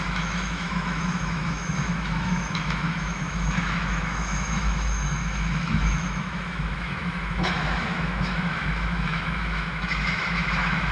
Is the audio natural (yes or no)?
no